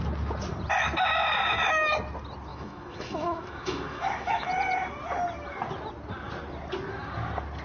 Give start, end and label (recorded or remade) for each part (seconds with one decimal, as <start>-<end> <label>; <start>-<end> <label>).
0.0-2.5 recorded; 2.5-4.5 remade; 4.5-7.6 recorded